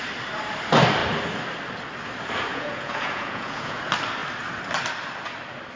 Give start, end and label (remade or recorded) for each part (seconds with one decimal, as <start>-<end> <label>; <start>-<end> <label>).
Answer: 0.0-2.5 recorded; 2.5-3.8 remade; 3.8-5.8 recorded